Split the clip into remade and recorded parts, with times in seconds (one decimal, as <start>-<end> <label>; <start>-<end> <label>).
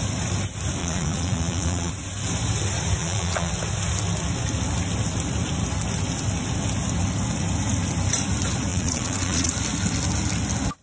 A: 0.0-0.8 recorded; 0.8-1.9 remade; 1.9-3.0 recorded; 3.0-3.5 remade; 3.5-8.7 recorded; 8.7-9.5 remade; 9.5-10.8 recorded